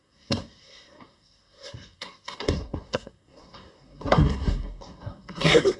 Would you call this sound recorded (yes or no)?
no